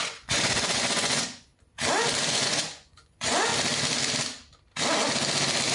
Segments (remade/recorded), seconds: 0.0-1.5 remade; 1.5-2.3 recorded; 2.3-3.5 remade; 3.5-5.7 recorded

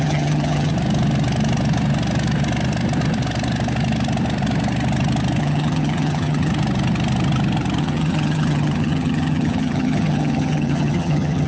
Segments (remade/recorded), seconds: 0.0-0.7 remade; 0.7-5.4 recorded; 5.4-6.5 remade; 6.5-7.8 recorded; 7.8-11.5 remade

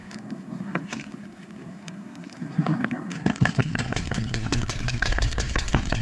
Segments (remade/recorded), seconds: 0.0-6.0 remade

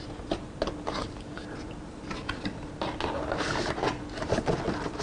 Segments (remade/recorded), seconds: 0.0-5.0 recorded

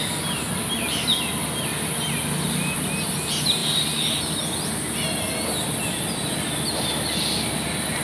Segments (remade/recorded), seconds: 0.0-8.0 recorded